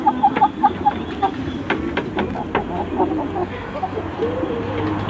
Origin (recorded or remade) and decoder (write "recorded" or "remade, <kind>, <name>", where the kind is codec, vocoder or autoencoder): recorded